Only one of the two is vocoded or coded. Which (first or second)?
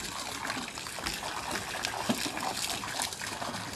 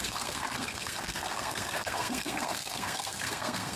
second